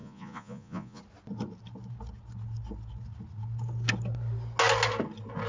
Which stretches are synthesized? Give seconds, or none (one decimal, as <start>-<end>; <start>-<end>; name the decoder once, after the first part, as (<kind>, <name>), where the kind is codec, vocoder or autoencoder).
0.0-1.0 (vocoder, Vocos)